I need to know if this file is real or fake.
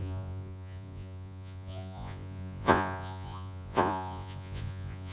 fake